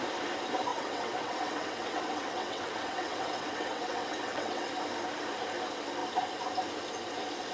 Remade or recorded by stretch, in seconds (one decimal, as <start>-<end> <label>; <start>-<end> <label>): 0.0-0.7 recorded; 0.7-4.7 remade; 4.7-7.5 recorded